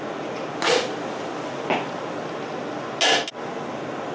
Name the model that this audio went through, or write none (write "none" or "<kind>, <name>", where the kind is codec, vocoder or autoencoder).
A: none